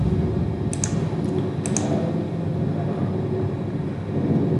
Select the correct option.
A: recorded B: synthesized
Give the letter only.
A